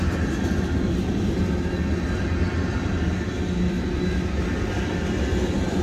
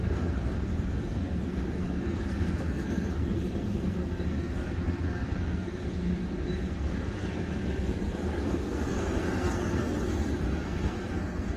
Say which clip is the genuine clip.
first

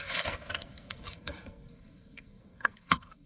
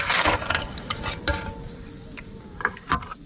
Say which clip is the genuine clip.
second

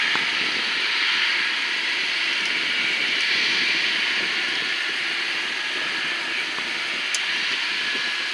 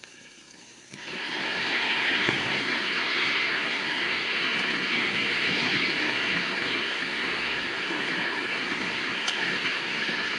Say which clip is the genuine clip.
first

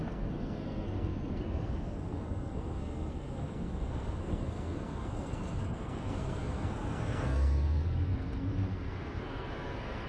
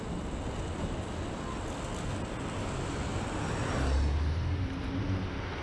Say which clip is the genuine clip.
second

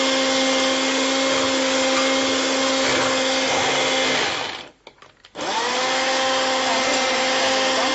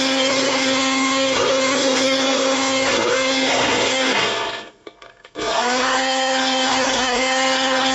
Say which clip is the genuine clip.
first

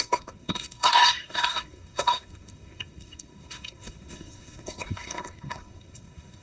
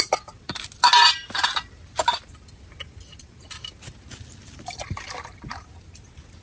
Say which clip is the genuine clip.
second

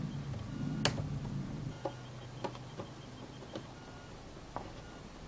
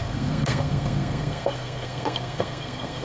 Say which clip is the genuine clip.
first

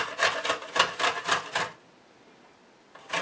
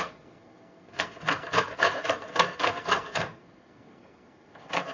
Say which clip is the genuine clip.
first